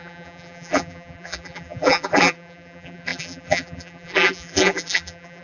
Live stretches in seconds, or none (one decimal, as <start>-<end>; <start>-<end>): none